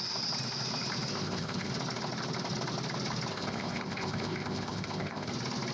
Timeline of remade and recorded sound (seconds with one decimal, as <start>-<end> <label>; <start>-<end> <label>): 0.0-1.1 recorded; 1.1-1.7 remade; 1.7-3.3 recorded; 3.3-5.3 remade; 5.3-5.7 recorded